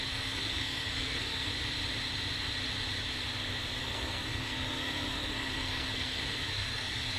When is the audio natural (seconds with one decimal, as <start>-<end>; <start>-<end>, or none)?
1.5-3.8